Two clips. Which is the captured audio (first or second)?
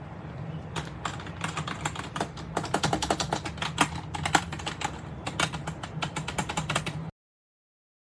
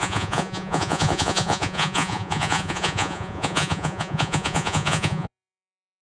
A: first